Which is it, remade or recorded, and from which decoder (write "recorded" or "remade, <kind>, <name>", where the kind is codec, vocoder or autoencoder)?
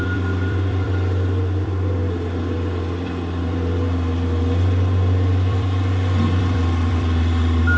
remade, vocoder, BigVGAN v2